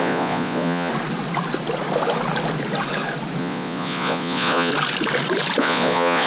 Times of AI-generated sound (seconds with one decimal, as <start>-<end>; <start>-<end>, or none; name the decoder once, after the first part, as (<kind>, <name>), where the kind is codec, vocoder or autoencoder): 0.0-0.9 (vocoder, Vocos); 3.4-4.7; 5.6-6.3